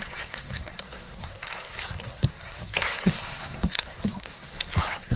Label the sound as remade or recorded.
remade